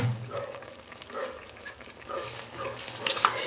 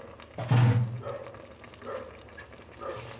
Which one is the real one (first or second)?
second